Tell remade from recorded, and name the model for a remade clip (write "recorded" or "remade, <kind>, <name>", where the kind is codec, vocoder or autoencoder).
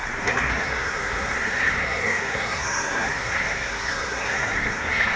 remade, codec, SNAC